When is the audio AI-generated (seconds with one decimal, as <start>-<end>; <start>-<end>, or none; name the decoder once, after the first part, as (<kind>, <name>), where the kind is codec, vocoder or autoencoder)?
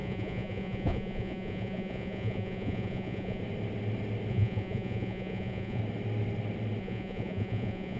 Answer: 0.0-3.4 (vocoder, Vocos); 4.3-5.8; 6.8-8.0